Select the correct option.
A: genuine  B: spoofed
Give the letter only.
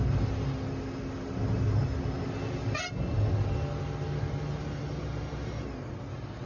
A